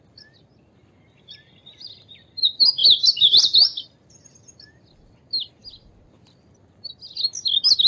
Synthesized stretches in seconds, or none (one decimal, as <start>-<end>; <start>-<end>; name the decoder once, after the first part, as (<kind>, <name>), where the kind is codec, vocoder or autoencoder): none